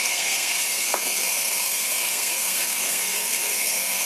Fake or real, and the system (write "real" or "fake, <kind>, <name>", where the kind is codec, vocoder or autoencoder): fake, codec, SNAC